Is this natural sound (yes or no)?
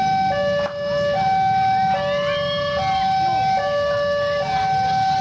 yes